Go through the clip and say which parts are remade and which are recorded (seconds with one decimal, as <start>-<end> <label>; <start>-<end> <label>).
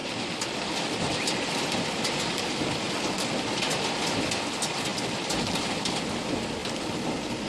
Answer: 0.0-4.0 remade; 4.0-4.9 recorded; 4.9-5.7 remade; 5.7-6.6 recorded; 6.6-7.5 remade